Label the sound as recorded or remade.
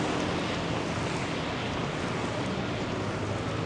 recorded